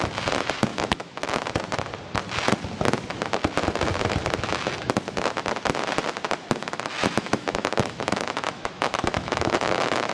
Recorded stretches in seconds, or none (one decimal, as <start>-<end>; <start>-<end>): 0.0-0.7; 1.3-6.6